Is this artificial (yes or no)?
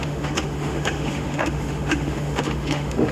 yes